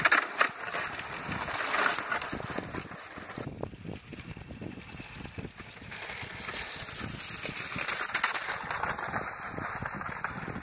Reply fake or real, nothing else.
real